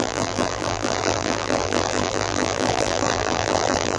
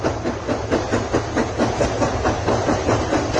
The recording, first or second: second